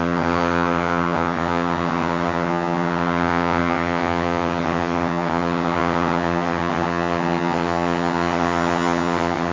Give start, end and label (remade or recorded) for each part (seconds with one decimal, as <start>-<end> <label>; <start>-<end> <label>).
0.0-9.5 remade